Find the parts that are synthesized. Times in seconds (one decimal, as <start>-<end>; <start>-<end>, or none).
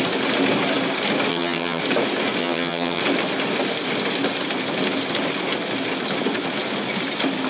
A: 1.3-1.8; 2.4-3.0